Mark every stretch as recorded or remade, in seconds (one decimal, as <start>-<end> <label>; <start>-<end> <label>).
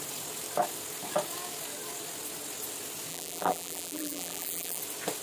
0.0-3.1 recorded; 3.1-4.8 remade; 4.8-5.2 recorded